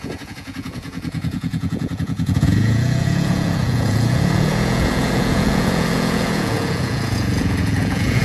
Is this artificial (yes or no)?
yes